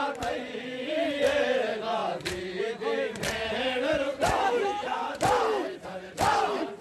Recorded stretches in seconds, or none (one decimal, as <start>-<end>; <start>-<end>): 0.0-6.8